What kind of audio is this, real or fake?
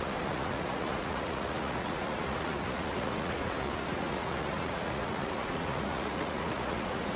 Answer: fake